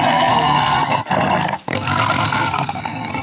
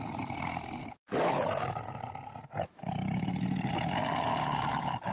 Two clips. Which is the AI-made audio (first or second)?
first